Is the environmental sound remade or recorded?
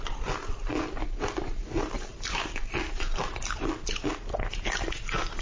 recorded